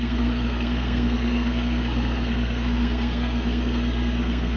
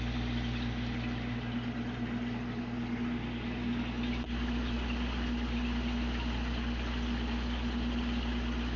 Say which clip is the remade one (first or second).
first